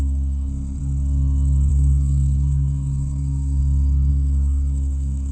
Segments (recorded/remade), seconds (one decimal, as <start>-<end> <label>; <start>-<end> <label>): 0.0-0.8 remade; 0.8-1.7 recorded; 1.7-3.6 remade; 3.6-4.1 recorded; 4.1-5.3 remade